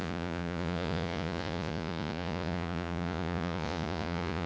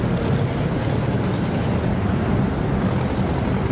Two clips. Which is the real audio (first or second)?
second